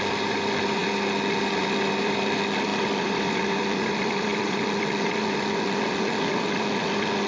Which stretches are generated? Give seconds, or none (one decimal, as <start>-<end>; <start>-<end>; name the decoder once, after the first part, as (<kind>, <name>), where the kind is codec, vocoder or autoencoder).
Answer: 0.0-0.8 (vocoder, BigVGAN v2); 1.6-4.3